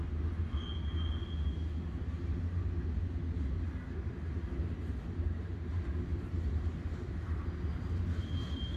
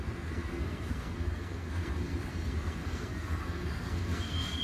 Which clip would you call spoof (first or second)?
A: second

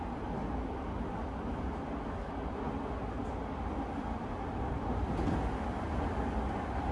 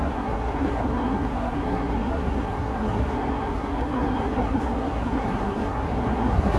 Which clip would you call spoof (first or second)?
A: second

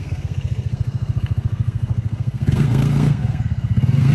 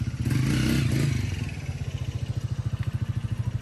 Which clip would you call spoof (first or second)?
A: first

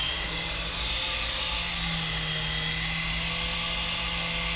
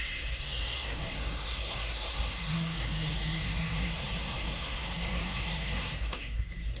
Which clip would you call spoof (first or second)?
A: second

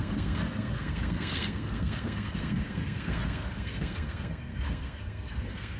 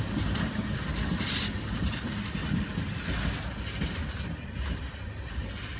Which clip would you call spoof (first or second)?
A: first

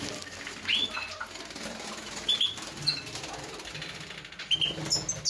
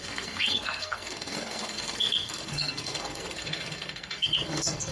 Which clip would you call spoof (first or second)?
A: second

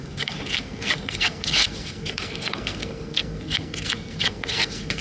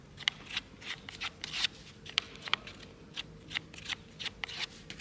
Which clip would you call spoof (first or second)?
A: first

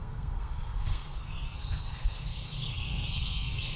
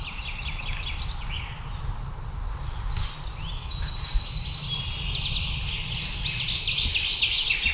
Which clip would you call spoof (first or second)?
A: first